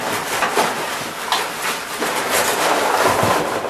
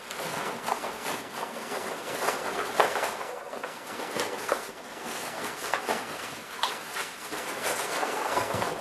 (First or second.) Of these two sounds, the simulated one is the second